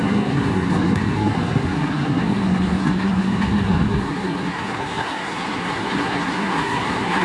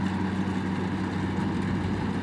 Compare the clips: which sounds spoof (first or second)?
first